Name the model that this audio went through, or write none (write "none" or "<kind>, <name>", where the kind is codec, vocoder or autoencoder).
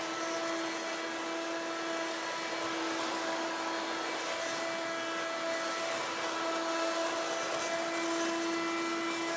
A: none